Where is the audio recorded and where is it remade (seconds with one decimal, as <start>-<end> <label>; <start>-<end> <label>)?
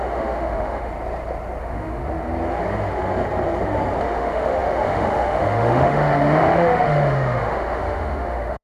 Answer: 0.0-0.9 remade; 0.9-1.6 recorded; 1.6-2.0 remade; 2.0-4.0 recorded; 4.0-8.6 remade